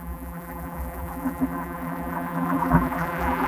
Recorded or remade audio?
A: remade